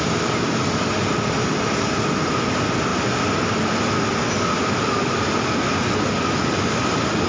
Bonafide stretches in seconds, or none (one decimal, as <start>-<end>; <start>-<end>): 0.0-7.3